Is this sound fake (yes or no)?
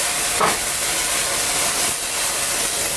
no